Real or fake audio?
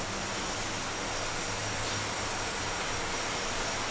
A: real